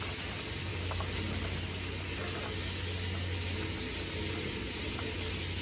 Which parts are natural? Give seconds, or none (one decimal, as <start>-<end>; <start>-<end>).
0.0-5.6